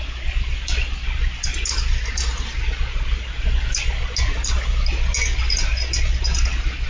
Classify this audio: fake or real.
real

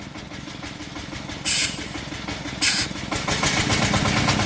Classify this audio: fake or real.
real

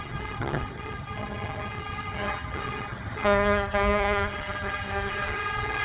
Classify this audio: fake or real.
fake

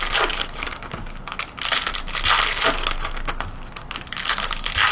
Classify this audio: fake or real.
real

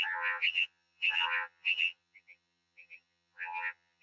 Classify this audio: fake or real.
fake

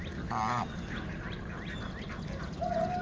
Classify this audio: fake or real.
real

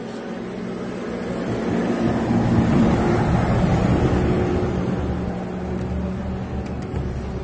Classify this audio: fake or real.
real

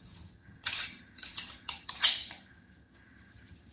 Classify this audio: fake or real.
fake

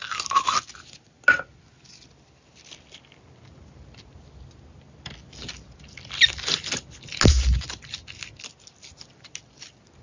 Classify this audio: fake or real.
real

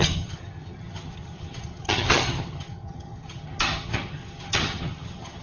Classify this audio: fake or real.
fake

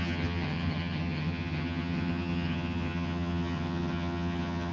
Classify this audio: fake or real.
fake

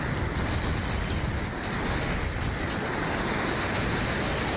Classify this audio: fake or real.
real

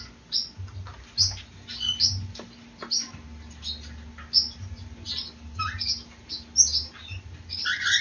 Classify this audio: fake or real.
real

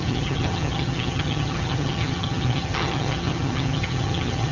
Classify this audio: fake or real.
fake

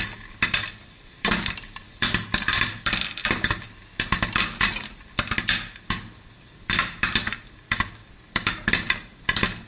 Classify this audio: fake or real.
real